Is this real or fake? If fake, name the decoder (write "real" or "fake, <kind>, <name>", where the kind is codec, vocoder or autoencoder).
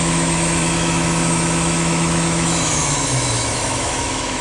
fake, autoencoder, DAC-VAE